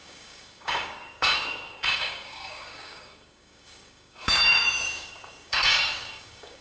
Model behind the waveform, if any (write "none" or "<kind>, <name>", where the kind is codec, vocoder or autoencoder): codec, DAC